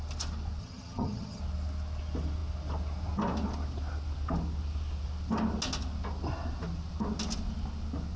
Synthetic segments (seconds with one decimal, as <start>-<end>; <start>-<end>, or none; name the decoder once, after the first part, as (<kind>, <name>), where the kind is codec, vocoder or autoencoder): 0.6-1.4 (vocoder, HiFi-GAN)